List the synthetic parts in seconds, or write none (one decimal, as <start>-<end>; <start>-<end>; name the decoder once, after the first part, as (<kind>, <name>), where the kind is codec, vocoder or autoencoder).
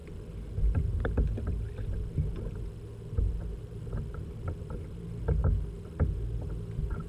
none